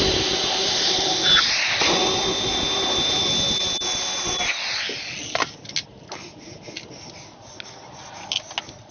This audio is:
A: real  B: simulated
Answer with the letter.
A